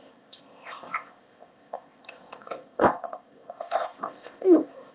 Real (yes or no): no